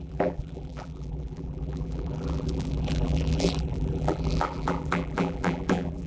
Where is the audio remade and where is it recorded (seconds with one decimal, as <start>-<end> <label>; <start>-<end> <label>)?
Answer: 0.0-6.1 remade